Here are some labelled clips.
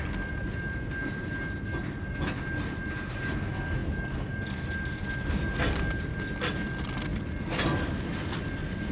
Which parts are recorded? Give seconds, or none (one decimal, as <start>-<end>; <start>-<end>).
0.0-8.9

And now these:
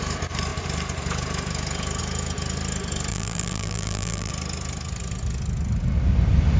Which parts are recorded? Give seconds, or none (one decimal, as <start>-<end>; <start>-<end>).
0.0-3.1; 4.3-6.6

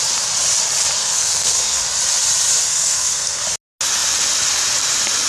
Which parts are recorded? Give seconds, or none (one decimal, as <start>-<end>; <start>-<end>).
0.0-1.0; 1.8-2.6; 3.4-5.3